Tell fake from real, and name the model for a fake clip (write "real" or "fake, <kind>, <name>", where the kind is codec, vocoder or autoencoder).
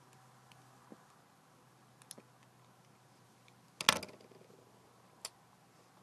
real